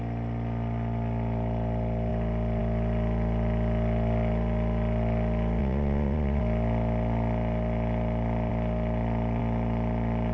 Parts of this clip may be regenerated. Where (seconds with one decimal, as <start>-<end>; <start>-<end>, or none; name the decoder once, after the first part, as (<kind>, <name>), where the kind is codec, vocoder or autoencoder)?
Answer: 5.6-6.4 (vocoder, Vocos)